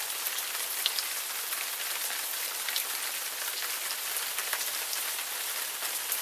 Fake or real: real